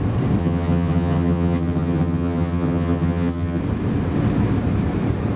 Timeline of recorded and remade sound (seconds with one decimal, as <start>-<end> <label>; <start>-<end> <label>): 0.0-0.4 recorded; 0.4-3.6 remade; 3.6-5.4 recorded